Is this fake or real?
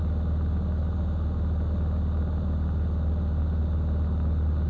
real